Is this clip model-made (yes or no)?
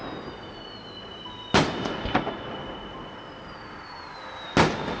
no